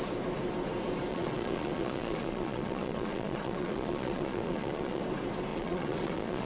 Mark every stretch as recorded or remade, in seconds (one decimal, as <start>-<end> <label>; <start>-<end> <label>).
0.0-1.1 recorded; 1.1-5.0 remade; 5.0-5.5 recorded; 5.5-6.5 remade